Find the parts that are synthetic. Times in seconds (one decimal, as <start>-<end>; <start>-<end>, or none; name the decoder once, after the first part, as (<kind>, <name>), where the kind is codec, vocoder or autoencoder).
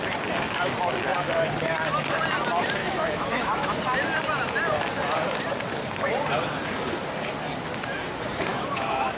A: 2.8-3.8 (autoencoder, DAC-VAE); 8.5-9.2